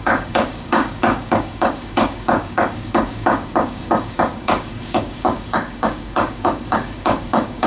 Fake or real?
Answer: fake